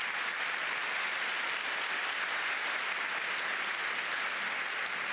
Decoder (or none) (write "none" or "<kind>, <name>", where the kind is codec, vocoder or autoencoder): none